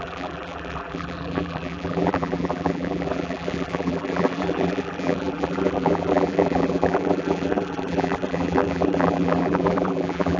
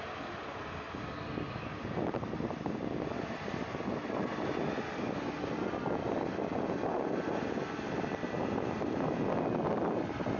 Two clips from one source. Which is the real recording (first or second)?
second